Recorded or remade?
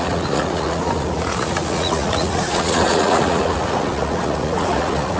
remade